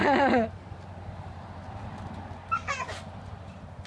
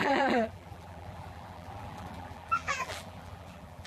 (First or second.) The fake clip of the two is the second